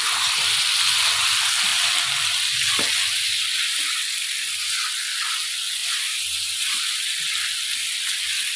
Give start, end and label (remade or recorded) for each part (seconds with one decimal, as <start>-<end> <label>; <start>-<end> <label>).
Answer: 0.0-5.8 recorded; 5.8-6.8 remade; 6.8-8.6 recorded